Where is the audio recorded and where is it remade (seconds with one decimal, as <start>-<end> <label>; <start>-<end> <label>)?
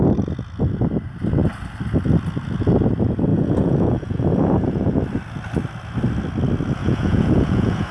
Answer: 0.0-3.3 recorded; 3.3-5.0 remade; 5.0-6.8 recorded; 6.8-7.9 remade